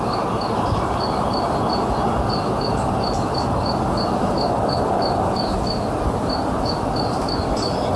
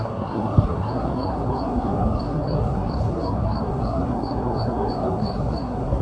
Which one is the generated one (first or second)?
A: second